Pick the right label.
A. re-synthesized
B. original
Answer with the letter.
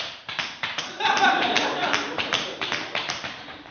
A